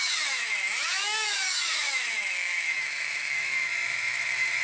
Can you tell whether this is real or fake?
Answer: fake